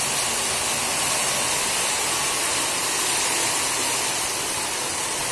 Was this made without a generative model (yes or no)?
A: yes